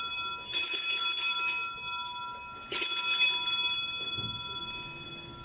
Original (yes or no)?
yes